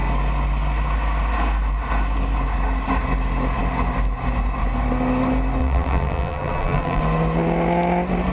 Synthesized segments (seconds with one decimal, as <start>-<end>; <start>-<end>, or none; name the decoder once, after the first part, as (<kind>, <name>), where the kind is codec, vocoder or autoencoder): 5.6-7.0 (vocoder, BigVGAN v2)